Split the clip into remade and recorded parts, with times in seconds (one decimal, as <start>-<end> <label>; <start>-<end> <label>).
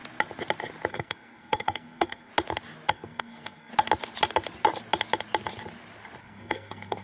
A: 0.0-0.9 recorded; 0.9-2.3 remade; 2.3-2.9 recorded; 2.9-3.7 remade; 3.7-6.2 recorded; 6.2-7.0 remade